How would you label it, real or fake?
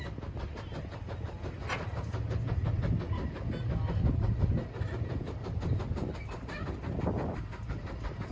real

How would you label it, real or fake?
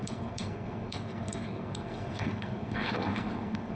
fake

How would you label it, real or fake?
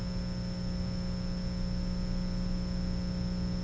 real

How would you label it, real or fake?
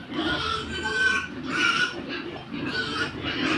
real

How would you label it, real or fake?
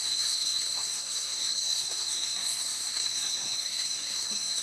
fake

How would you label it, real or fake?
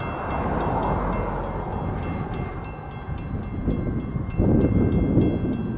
real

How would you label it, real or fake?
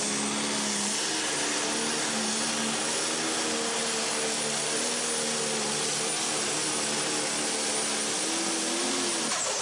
real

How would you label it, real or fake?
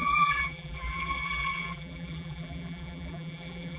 fake